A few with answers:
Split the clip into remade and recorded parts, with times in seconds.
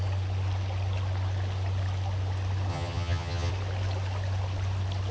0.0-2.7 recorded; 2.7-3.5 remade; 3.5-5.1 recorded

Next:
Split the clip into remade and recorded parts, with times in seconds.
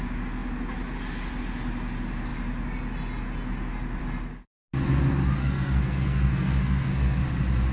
0.0-5.4 recorded; 5.4-7.2 remade; 7.2-7.7 recorded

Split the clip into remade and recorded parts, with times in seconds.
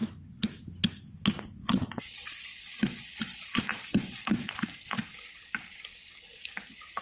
0.0-1.6 recorded; 1.6-4.5 remade; 4.5-7.0 recorded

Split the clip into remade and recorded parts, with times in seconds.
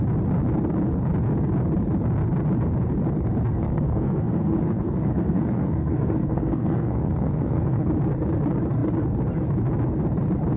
0.0-3.6 recorded; 3.6-7.9 remade; 7.9-10.6 recorded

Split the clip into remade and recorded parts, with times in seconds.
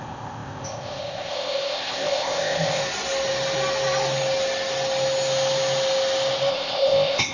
0.0-2.8 remade; 2.8-6.5 recorded; 6.5-7.3 remade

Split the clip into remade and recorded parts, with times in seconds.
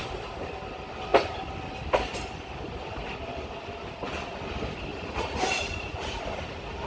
0.0-4.9 recorded; 4.9-6.2 remade; 6.2-6.9 recorded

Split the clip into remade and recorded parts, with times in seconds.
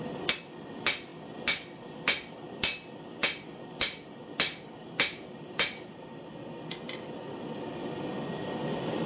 0.0-4.8 recorded; 4.8-6.3 remade; 6.3-9.1 recorded